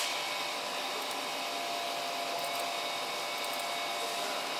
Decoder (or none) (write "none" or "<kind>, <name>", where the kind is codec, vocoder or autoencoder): none